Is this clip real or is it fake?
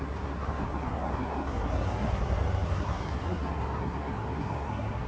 fake